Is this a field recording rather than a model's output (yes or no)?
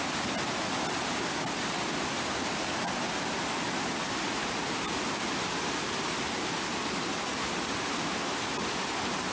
yes